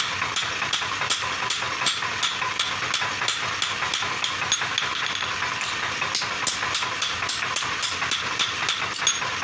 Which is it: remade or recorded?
recorded